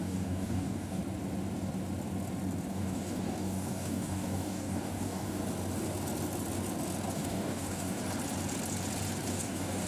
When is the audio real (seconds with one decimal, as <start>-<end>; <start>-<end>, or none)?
1.0-2.7; 5.4-7.1; 8.0-9.3